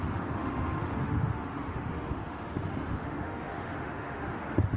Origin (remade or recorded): remade